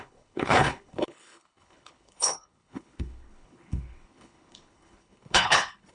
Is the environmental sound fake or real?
fake